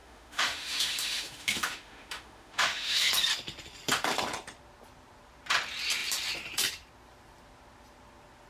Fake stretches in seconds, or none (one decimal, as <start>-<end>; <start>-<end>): 0.0-3.1